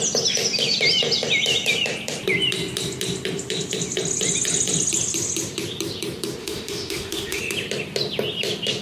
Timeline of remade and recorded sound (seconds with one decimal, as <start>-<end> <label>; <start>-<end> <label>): 0.0-6.4 recorded; 6.4-7.4 remade; 7.4-8.8 recorded